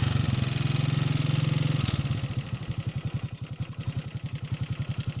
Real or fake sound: real